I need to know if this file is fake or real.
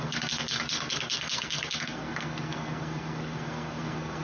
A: fake